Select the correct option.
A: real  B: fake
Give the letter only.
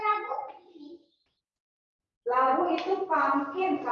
A